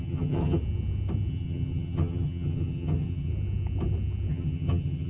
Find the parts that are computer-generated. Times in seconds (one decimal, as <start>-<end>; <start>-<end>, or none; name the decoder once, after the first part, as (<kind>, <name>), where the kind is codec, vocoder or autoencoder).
0.0-0.6 (vocoder, HiFi-GAN); 1.3-3.3; 4.3-5.1